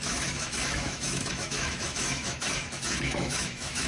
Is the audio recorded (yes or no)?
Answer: no